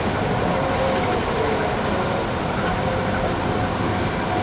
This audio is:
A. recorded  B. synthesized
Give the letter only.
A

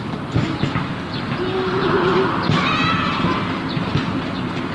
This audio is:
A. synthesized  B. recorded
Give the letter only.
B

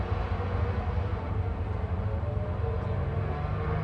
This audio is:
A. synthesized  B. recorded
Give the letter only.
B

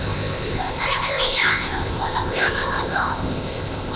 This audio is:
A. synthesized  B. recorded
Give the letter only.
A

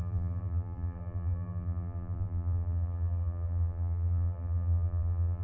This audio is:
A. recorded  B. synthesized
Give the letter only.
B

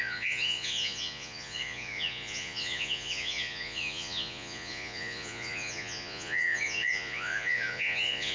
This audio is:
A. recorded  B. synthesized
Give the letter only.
B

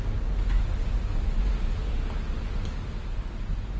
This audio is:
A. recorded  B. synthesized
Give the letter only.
A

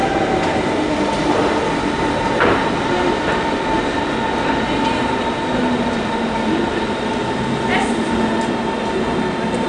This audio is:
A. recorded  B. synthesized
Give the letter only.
A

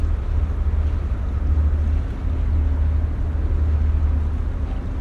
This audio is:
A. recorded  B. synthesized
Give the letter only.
A